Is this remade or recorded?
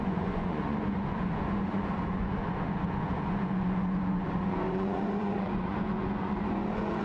remade